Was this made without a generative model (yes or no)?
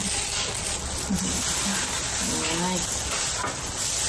yes